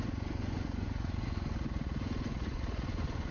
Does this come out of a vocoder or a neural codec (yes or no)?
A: yes